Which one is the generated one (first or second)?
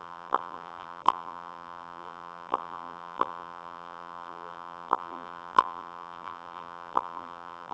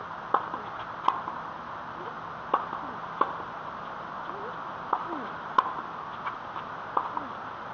first